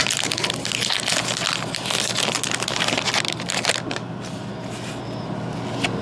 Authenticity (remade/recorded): recorded